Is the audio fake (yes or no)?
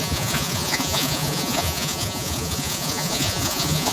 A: yes